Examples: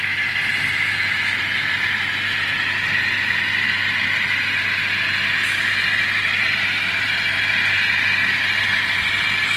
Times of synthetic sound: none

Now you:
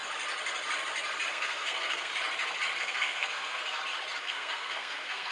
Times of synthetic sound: 1.3-2.1 (codec, SNAC); 2.8-3.6; 4.2-5.3

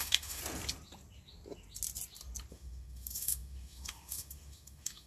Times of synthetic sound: 0.0-0.4 (autoencoder, DAC-VAE); 2.5-5.1

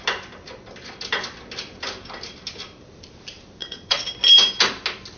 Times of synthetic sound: 3.6-4.1 (vocoder, WaveNeXt)